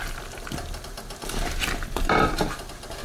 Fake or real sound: real